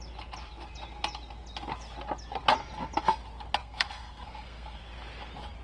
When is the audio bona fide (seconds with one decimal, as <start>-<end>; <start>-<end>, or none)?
0.0-3.6; 4.8-5.6